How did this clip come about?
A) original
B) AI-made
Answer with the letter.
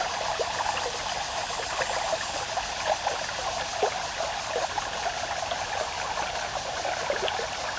A